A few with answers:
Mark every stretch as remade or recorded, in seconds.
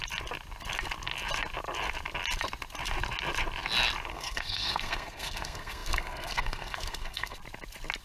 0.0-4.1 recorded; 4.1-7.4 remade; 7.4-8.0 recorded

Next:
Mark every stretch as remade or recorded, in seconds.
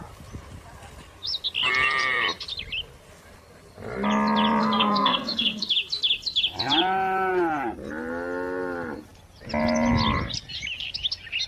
0.0-4.6 recorded; 4.6-5.7 remade; 5.7-11.5 recorded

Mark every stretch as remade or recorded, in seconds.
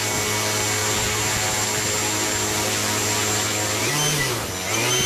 0.0-5.1 recorded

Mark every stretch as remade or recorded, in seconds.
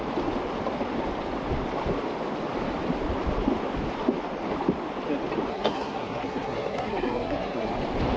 0.0-5.5 recorded; 5.5-7.7 remade; 7.7-8.2 recorded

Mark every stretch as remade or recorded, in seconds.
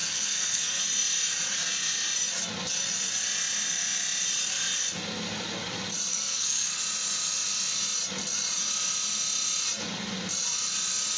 0.0-0.8 remade; 0.8-6.1 recorded; 6.1-6.8 remade; 6.8-11.2 recorded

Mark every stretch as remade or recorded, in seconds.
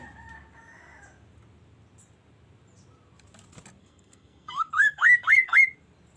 0.0-3.8 recorded; 3.8-5.6 remade; 5.6-6.2 recorded